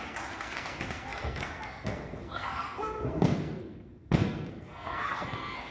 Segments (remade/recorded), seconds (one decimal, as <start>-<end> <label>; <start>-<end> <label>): 0.0-5.7 remade

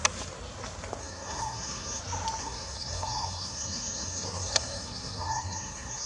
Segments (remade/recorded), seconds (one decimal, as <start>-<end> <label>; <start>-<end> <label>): 0.0-1.0 recorded; 1.0-2.0 remade; 2.0-2.4 recorded; 2.4-6.1 remade

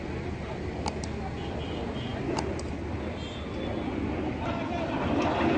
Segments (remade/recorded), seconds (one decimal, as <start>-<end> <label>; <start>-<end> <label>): 0.0-5.6 recorded

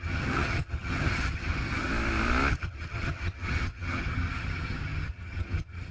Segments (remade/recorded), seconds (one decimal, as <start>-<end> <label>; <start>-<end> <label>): 0.0-1.9 remade; 1.9-2.5 recorded; 2.5-5.9 remade

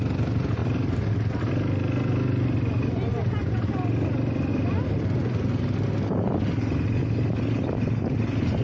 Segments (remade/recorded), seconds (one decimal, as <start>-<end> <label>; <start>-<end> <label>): 0.0-8.6 recorded

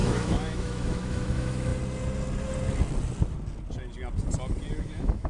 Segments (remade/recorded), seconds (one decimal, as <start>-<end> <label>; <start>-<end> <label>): 0.0-1.7 remade; 1.7-4.8 recorded; 4.8-5.3 remade